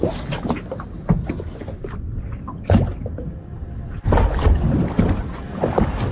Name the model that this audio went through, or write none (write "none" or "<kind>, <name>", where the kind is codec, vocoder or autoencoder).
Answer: none